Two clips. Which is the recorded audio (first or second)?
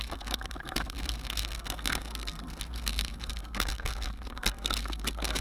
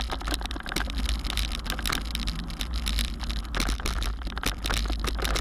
second